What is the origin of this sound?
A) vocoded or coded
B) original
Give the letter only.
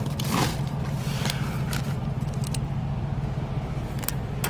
B